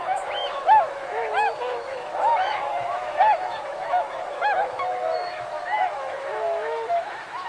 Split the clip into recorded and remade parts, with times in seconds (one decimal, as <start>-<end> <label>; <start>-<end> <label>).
0.0-7.5 remade

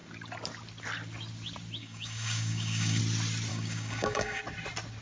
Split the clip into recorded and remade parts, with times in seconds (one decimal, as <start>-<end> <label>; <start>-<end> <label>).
0.0-1.8 recorded; 1.8-3.0 remade; 3.0-3.5 recorded; 3.5-4.4 remade; 4.4-5.0 recorded

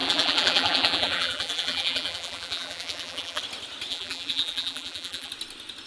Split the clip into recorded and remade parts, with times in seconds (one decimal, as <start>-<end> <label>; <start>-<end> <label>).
0.0-3.4 remade; 3.4-3.9 recorded; 3.9-5.3 remade; 5.3-5.9 recorded